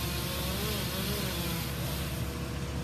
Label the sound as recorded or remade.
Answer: recorded